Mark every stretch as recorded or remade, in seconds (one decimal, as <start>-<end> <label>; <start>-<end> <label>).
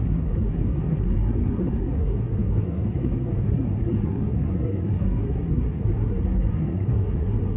0.0-7.6 remade